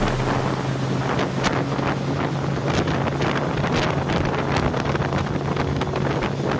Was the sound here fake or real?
real